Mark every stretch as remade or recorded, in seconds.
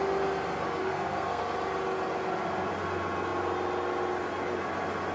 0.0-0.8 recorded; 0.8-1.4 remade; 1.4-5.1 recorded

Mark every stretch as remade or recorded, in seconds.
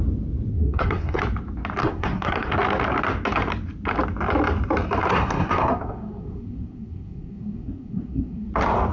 0.0-0.5 recorded; 0.5-1.2 remade; 1.2-1.8 recorded; 1.8-2.5 remade; 2.5-5.1 recorded; 5.1-8.5 remade; 8.5-8.9 recorded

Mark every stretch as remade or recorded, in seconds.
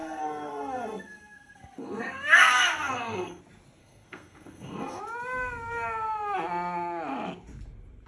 0.0-3.4 remade; 3.4-3.8 recorded; 3.8-5.0 remade; 5.0-8.1 recorded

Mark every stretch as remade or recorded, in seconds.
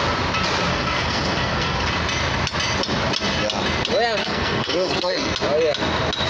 0.0-0.7 recorded; 0.7-1.9 remade; 1.9-4.2 recorded; 4.2-5.3 remade; 5.3-6.3 recorded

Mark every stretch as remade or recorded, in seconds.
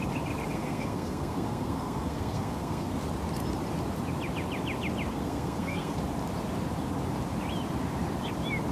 0.0-0.5 recorded; 0.5-2.9 remade; 2.9-5.1 recorded; 5.1-6.0 remade; 6.0-8.7 recorded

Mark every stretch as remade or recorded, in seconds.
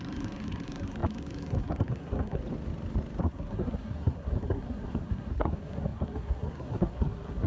0.0-2.4 remade; 2.4-3.2 recorded; 3.2-7.5 remade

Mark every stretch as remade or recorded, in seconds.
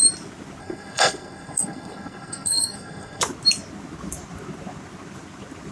0.0-0.6 recorded; 0.6-3.2 remade; 3.2-5.7 recorded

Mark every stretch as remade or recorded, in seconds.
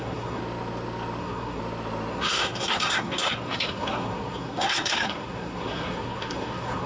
0.0-0.4 remade; 0.4-1.2 recorded; 1.2-1.6 remade; 1.6-2.1 recorded; 2.1-6.9 remade